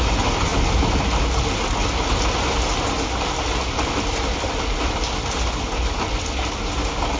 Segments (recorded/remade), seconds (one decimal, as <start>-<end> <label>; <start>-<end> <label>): 0.0-7.2 recorded